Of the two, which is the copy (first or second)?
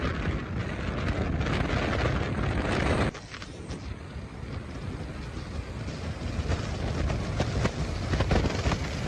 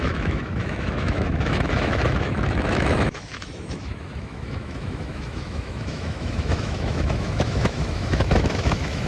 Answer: second